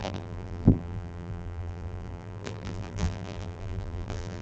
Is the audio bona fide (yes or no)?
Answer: no